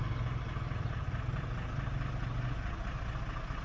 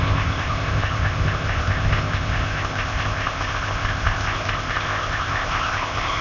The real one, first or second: first